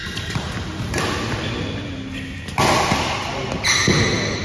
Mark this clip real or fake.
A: real